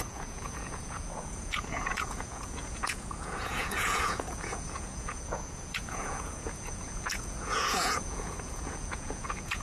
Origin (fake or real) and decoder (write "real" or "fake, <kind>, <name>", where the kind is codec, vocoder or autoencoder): fake, vocoder, Vocos